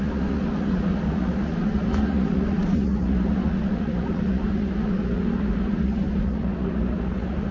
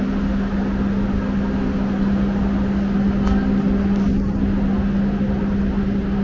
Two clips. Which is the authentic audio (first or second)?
second